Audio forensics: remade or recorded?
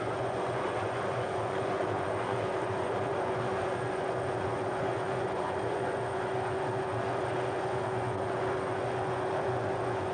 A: remade